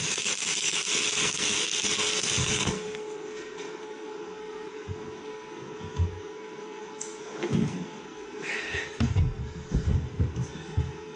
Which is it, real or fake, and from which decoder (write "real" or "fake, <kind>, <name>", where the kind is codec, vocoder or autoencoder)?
fake, codec, SNAC